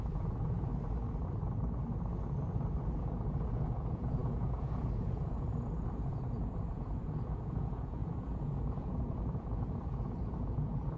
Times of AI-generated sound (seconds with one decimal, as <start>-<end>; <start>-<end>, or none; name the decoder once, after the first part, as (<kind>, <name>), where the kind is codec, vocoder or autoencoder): 0.0-0.7 (vocoder, Vocos); 3.0-11.0